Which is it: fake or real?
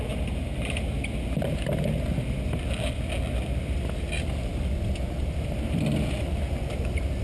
real